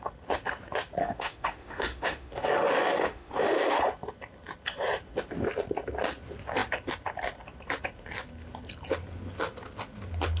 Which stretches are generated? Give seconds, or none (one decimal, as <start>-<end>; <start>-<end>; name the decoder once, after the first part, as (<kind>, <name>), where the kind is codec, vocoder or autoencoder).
1.0-3.8 (autoencoder, DAC-VAE)

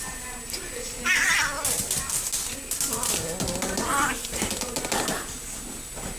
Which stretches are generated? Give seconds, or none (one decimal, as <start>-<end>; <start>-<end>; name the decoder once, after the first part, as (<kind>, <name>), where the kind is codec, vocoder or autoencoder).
none